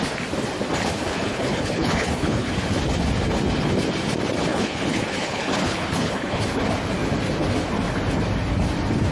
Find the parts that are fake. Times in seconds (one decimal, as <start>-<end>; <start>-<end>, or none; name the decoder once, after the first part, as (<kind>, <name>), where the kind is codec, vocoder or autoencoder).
0.9-2.5 (codec, HILCodec); 4.5-6.4